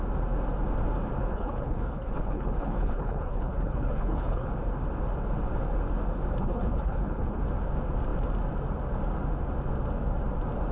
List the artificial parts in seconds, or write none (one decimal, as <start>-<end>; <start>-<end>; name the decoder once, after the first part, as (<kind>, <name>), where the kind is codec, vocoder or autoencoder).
1.3-4.5 (codec, HILCodec); 6.4-7.4